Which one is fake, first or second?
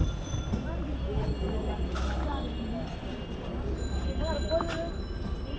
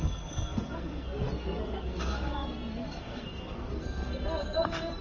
second